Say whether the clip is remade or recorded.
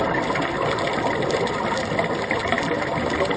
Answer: recorded